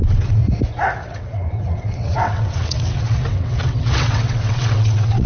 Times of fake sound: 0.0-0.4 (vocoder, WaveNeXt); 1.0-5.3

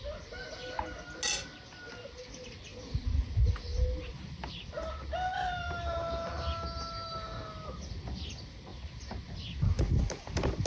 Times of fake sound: 2.7-4.5 (vocoder, BigVGAN v2)

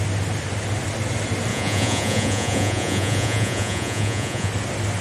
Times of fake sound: 1.5-4.5 (vocoder, Vocos)

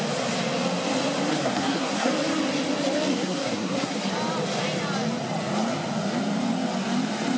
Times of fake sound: 1.3-2.1 (codec, SNAC); 3.1-4.1

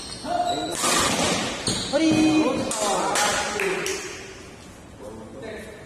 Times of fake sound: none

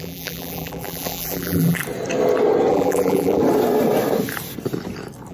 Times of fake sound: 0.0-1.8 (vocoder, BigVGAN v2); 2.7-3.4

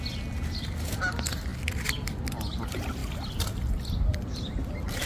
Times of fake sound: none